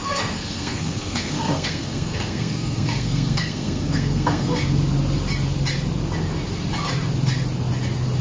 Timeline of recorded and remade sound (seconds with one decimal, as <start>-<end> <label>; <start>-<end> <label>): 0.0-4.6 remade; 4.6-8.2 recorded